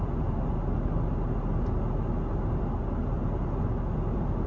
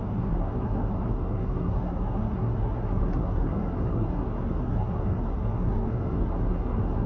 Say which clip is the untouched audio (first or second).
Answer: first